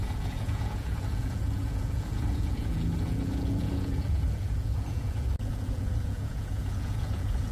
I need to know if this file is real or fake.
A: fake